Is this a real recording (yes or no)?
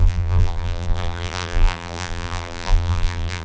no